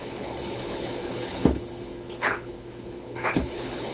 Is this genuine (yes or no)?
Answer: no